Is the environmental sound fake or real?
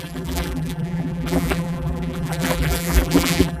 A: fake